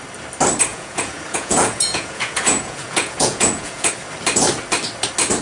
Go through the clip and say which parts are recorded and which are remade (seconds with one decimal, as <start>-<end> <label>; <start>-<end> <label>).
0.0-0.7 recorded; 0.7-3.9 remade; 3.9-5.4 recorded